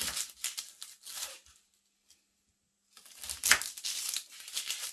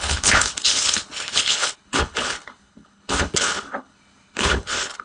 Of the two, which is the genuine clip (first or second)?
first